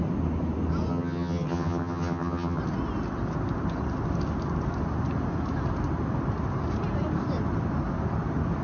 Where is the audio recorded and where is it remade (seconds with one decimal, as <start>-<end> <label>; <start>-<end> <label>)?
0.0-0.9 recorded; 0.9-2.6 remade; 2.6-8.6 recorded